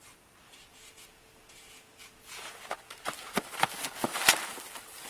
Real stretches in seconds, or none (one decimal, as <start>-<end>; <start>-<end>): 0.0-0.7; 2.6-5.1